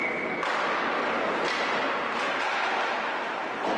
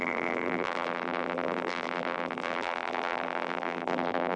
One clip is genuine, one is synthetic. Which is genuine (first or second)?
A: first